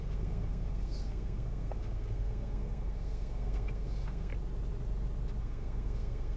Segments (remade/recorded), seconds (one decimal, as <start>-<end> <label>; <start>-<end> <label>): 0.0-4.3 remade; 4.3-5.4 recorded; 5.4-6.4 remade